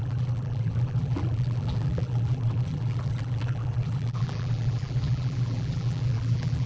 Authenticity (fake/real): fake